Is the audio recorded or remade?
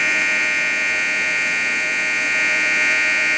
remade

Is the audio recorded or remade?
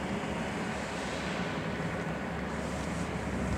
recorded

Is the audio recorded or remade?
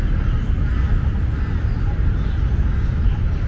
recorded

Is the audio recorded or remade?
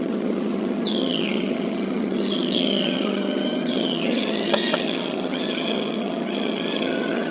remade